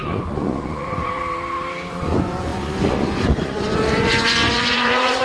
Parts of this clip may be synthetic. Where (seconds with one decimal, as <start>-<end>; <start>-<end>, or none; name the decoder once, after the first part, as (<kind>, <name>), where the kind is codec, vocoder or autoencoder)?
0.0-1.2 (vocoder, Vocos); 1.9-5.2